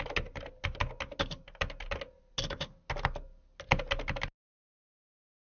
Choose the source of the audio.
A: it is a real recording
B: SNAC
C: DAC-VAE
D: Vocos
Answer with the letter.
A